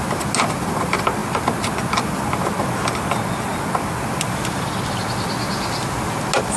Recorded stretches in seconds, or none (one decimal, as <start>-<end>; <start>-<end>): 0.0-6.6